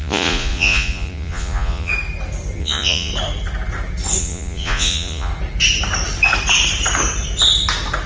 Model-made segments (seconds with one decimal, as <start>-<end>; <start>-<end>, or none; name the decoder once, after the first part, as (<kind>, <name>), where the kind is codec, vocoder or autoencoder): 0.0-1.9 (vocoder, Vocos); 2.6-3.1; 4.2-5.3